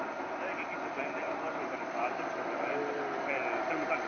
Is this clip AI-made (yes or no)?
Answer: no